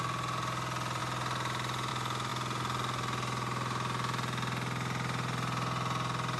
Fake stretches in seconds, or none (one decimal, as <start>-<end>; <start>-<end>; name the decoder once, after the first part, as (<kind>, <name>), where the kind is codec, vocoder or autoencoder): none